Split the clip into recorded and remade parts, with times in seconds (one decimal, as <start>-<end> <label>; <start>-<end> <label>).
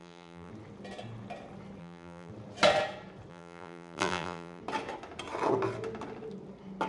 0.0-0.5 remade; 0.5-1.8 recorded; 1.8-2.3 remade; 2.3-3.3 recorded; 3.3-4.6 remade; 4.6-6.9 recorded